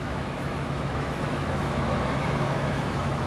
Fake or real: fake